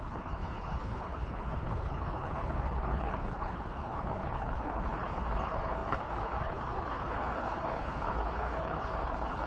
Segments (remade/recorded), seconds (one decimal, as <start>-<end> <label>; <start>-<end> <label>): 0.0-9.5 remade